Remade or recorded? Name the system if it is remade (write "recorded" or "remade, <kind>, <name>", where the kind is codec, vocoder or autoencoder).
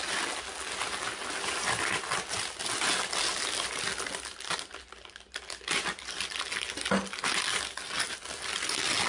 recorded